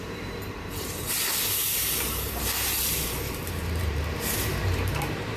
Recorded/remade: remade